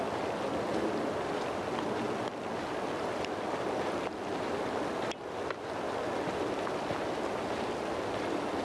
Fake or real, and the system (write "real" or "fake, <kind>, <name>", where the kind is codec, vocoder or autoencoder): real